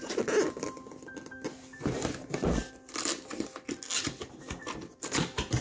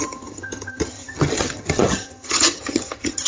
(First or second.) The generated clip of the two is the second